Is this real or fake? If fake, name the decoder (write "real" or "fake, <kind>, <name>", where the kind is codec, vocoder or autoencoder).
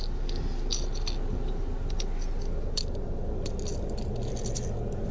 real